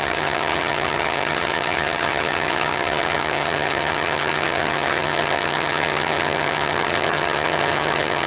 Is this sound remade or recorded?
remade